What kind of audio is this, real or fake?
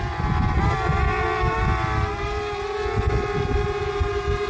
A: real